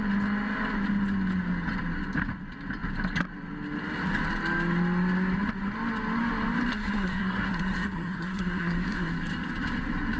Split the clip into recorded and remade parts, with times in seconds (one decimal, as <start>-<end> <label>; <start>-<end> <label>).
0.0-6.7 recorded; 6.7-9.1 remade; 9.1-10.2 recorded